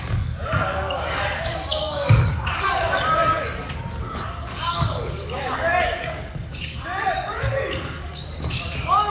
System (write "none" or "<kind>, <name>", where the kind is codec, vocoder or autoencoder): codec, DAC